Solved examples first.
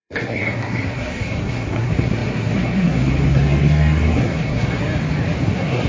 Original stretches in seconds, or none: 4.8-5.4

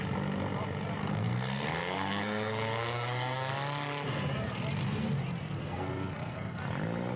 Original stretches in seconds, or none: 0.0-1.0; 3.5-5.6; 6.6-7.2

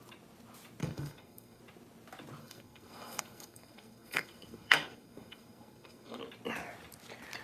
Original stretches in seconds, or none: 0.0-0.8; 1.6-2.4; 6.2-7.4

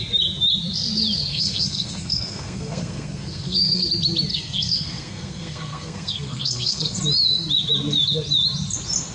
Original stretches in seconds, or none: 0.0-1.3; 3.9-4.3; 7.0-9.1

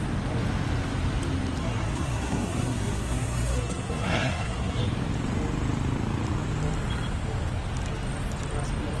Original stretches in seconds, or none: 0.0-1.6; 4.8-9.0

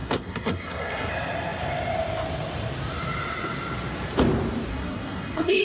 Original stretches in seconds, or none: 1.1-4.7